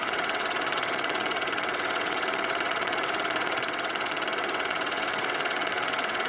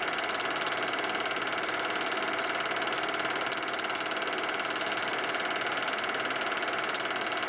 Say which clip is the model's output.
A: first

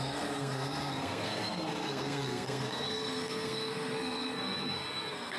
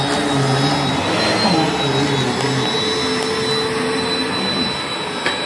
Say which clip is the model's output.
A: first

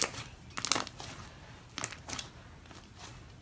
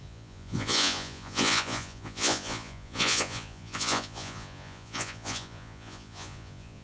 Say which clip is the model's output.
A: second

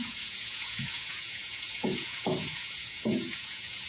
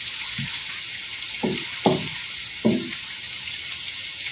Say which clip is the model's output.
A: first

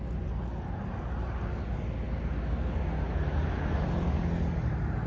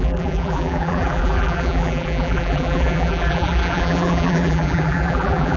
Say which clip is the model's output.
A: second